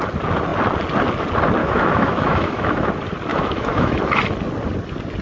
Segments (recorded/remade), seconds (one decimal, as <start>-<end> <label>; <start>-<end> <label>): 0.0-1.6 recorded; 1.6-2.9 remade; 2.9-3.3 recorded; 3.3-4.0 remade; 4.0-5.2 recorded